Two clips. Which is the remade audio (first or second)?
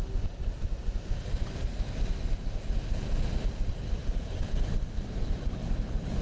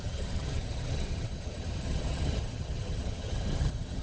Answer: second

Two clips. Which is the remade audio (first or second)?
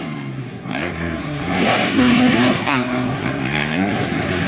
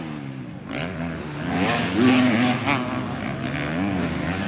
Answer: first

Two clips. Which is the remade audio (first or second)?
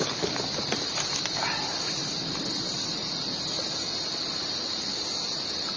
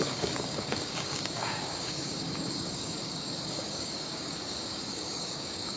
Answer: second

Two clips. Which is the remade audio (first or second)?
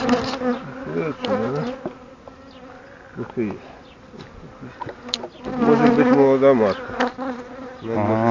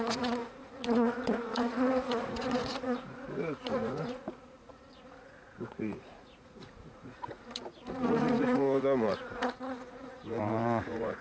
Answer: second